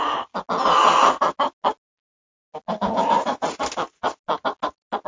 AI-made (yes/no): no